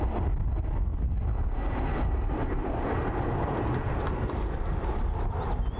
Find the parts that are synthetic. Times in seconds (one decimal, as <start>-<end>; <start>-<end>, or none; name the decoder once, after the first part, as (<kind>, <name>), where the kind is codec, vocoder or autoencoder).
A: none